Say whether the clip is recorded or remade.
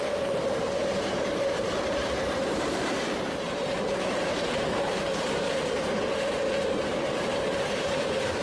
remade